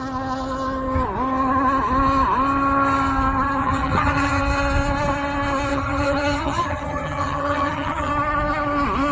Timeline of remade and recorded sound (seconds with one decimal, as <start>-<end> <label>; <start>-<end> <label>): 0.0-3.6 recorded; 3.6-4.4 remade; 4.4-5.7 recorded; 5.7-8.1 remade; 8.1-9.1 recorded